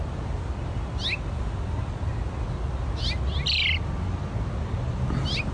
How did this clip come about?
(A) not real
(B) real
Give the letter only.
B